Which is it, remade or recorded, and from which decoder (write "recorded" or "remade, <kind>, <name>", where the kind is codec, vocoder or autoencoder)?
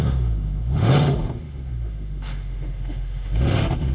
remade, autoencoder, DAC-VAE